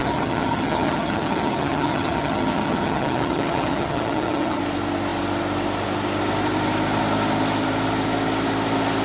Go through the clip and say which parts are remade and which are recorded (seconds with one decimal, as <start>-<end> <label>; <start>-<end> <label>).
0.0-4.6 remade; 4.6-9.0 recorded